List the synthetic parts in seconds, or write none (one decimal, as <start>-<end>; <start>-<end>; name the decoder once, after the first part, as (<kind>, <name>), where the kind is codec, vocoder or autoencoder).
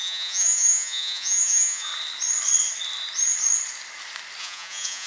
0.0-1.9 (vocoder, Vocos); 4.4-5.1